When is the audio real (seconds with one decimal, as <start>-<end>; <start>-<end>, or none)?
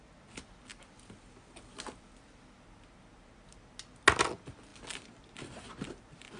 0.0-6.4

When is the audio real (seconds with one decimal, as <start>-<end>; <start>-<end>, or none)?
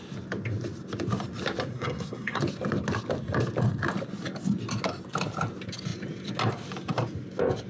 0.0-1.7; 2.4-7.7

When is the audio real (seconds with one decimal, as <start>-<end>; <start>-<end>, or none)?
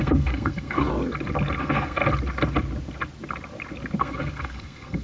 0.9-1.6; 2.0-4.0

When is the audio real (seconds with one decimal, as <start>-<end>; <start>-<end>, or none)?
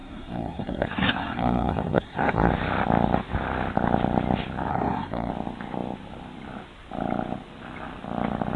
2.5-4.7; 5.3-8.6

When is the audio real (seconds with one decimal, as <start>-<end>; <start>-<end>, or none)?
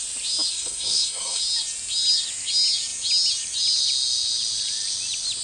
0.0-0.5; 1.4-5.4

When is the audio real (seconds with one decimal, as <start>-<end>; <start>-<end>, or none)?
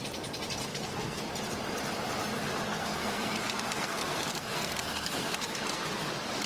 0.0-0.7; 1.3-2.7; 5.8-6.5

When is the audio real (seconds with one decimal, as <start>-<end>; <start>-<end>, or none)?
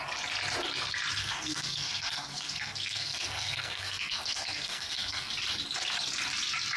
0.0-1.2; 5.3-6.8